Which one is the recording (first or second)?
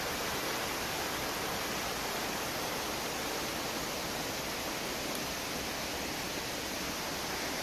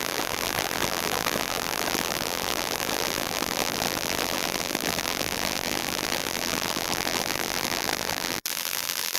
first